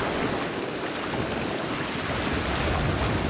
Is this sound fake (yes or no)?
no